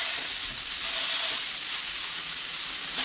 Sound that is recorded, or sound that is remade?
recorded